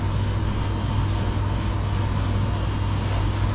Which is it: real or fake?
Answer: real